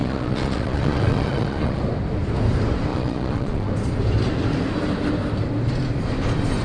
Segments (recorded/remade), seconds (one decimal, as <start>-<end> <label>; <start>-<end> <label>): 0.0-1.8 remade; 1.8-2.9 recorded; 2.9-3.7 remade; 3.7-6.6 recorded